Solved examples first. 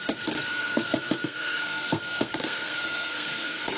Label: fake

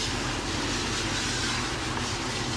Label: real